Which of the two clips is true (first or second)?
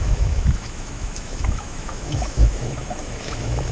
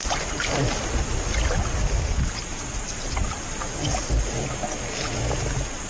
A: second